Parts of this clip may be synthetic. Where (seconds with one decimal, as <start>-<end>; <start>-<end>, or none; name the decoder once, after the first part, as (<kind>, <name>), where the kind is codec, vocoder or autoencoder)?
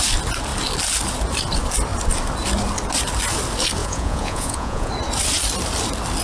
3.8-4.9 (vocoder, Vocos)